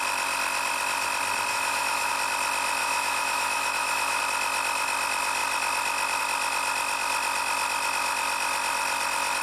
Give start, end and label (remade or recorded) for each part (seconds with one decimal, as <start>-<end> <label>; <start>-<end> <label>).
0.0-1.5 recorded; 1.5-2.1 remade; 2.1-2.8 recorded; 2.8-4.2 remade; 4.2-9.4 recorded